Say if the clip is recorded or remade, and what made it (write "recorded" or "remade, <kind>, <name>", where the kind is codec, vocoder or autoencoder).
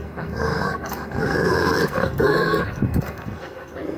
remade, codec, SNAC